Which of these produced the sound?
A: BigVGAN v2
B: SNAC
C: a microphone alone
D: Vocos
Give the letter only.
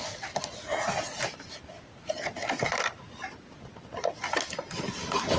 C